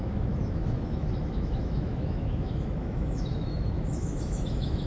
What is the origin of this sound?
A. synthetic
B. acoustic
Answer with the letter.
A